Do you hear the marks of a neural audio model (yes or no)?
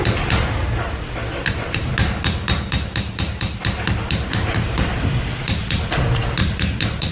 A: no